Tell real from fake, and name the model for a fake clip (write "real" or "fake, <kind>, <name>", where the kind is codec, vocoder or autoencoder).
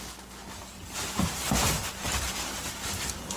real